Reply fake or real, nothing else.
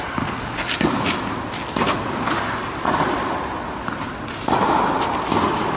real